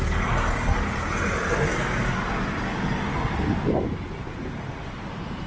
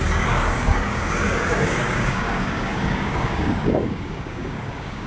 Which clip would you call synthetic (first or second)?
second